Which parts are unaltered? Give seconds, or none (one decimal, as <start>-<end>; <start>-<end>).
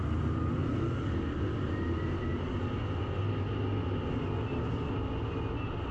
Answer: 0.0-5.9